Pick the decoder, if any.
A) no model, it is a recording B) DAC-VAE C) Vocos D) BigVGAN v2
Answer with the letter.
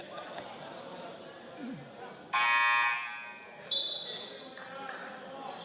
A